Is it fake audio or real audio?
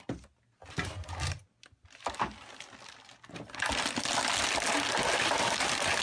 real